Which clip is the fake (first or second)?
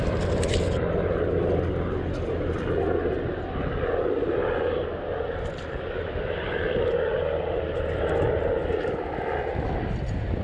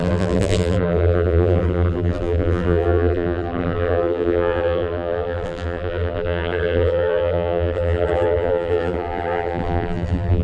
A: second